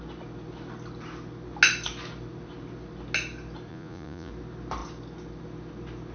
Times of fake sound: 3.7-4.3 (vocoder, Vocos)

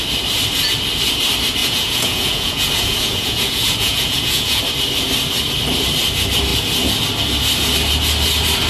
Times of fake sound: 1.6-4.6 (vocoder, Vocos)

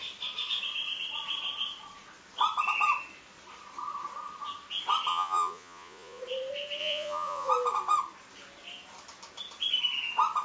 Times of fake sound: 5.1-6.2 (vocoder, Vocos); 6.8-7.5

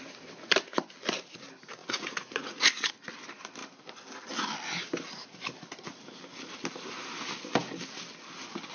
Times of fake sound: 1.8-2.9 (vocoder, Vocos)